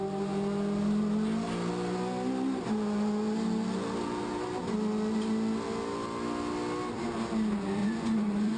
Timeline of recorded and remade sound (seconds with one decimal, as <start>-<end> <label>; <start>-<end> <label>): 0.0-7.8 recorded; 7.8-8.6 remade